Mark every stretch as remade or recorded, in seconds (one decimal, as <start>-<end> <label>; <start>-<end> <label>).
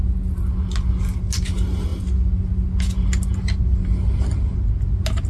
0.0-5.3 recorded